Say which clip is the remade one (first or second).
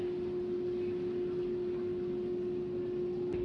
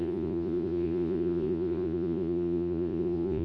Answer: second